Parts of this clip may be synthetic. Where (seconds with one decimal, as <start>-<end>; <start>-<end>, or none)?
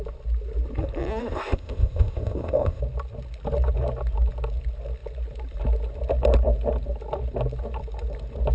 1.2-2.8